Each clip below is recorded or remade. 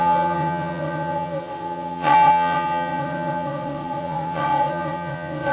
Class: remade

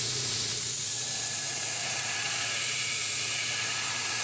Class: remade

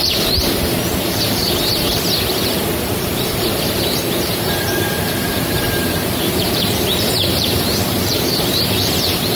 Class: remade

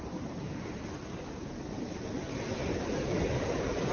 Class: recorded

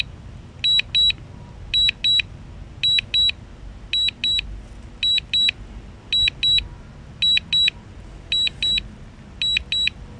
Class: recorded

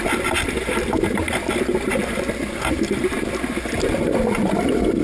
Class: recorded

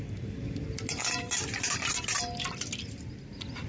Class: recorded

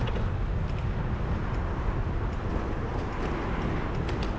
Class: recorded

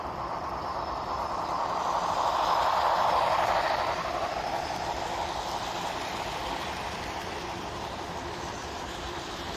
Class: remade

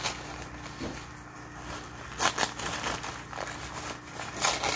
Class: recorded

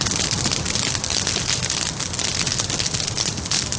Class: recorded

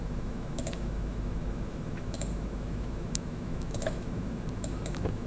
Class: remade